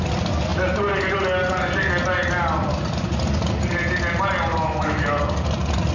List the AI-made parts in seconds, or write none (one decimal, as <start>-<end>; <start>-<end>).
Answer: 4.5-5.2